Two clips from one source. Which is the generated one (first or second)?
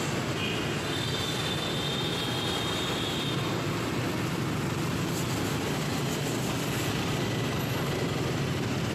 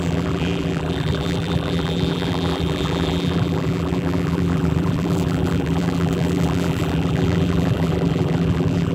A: second